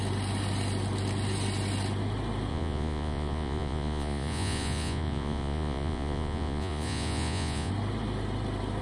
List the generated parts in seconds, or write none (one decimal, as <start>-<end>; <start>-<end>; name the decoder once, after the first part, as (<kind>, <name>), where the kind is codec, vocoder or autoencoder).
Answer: 2.5-7.7 (vocoder, Vocos)